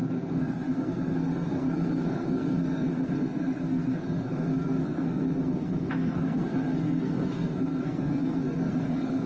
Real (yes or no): no